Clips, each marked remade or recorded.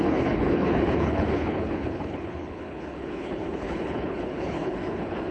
remade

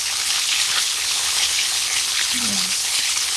remade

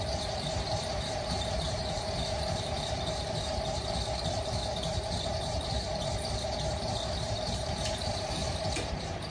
remade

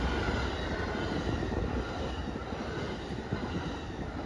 recorded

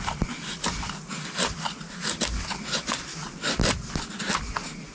recorded